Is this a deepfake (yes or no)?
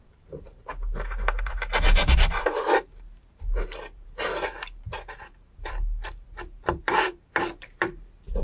yes